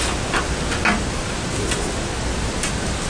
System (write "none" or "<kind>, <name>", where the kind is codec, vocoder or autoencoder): none